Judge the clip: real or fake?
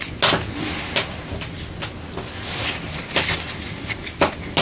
real